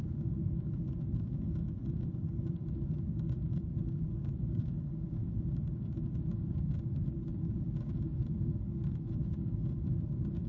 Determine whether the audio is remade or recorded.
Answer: remade